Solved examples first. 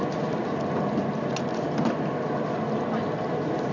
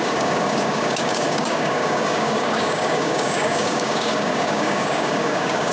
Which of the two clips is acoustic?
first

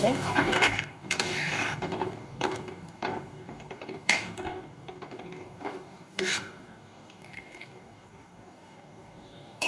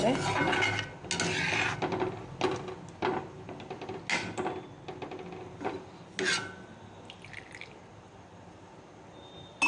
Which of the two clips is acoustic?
second